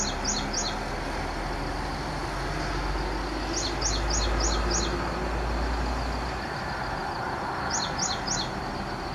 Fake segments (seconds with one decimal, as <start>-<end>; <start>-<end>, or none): none